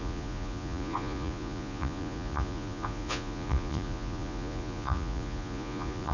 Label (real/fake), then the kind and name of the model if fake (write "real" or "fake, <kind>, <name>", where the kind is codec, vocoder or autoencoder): fake, vocoder, Vocos